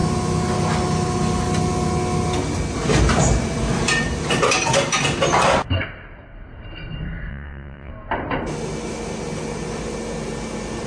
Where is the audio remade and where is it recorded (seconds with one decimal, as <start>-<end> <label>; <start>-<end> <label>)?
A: 0.0-7.3 recorded; 7.3-7.9 remade; 7.9-10.9 recorded